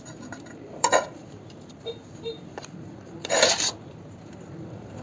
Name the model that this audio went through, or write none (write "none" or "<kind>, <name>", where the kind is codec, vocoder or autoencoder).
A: vocoder, BigVGAN v2